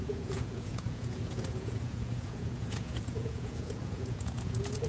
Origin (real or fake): fake